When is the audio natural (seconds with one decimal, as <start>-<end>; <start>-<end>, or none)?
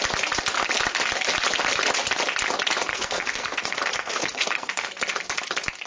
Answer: 0.0-2.9; 4.9-5.9